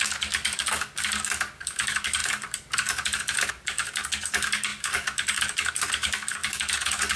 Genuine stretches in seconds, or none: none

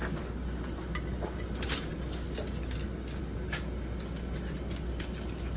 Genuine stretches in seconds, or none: 0.0-5.6

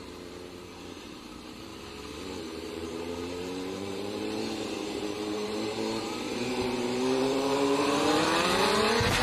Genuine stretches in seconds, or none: 1.7-2.4

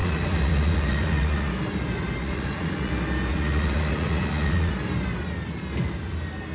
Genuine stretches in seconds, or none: 1.5-2.2; 2.9-3.3; 4.7-6.5

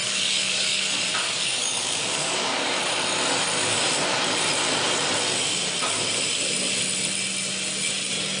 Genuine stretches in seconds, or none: 2.8-8.4

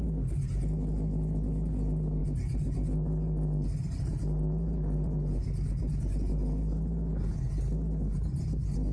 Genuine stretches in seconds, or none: 0.0-8.9

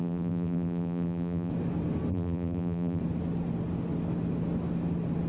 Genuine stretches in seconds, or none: 1.5-2.1; 3.0-5.3

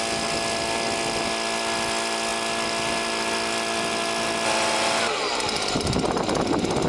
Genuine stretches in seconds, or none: 0.0-6.9